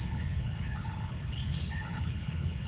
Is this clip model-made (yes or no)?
yes